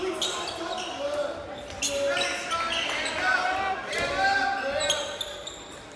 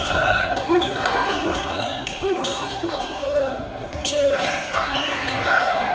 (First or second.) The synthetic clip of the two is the second